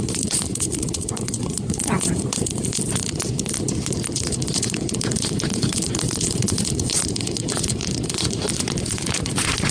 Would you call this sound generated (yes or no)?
yes